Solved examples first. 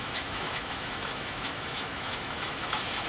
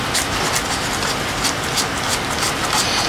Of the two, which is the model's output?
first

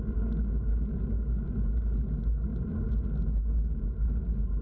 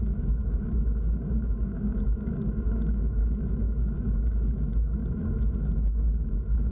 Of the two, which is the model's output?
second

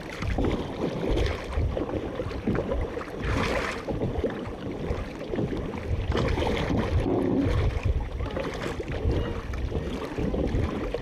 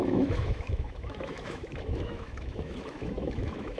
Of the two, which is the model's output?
second